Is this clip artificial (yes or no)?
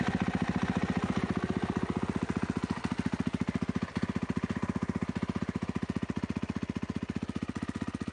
no